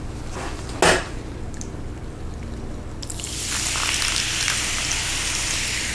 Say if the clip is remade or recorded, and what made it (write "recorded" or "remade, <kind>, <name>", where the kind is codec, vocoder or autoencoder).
recorded